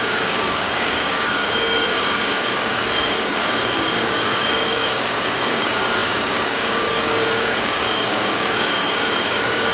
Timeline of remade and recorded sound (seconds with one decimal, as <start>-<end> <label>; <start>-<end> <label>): 0.0-9.7 remade